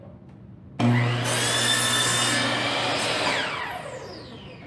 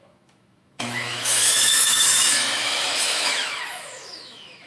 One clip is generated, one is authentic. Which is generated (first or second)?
second